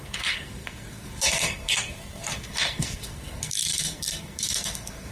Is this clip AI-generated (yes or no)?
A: yes